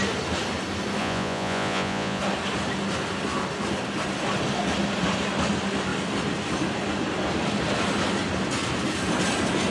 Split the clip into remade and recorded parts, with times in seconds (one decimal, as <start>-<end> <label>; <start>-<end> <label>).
0.0-1.0 recorded; 1.0-2.2 remade; 2.2-9.7 recorded